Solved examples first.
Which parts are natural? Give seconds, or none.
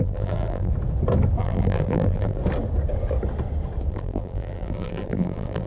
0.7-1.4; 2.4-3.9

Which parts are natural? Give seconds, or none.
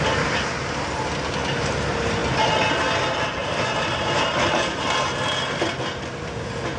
0.0-3.4; 6.1-6.8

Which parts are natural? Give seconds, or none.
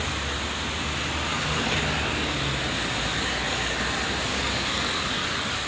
0.0-1.3; 2.4-3.1; 3.8-4.3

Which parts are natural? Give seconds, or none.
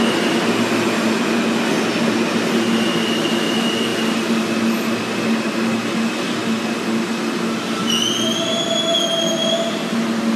0.0-10.4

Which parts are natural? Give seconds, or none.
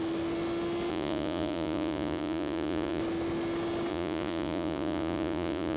0.0-0.9; 3.0-3.9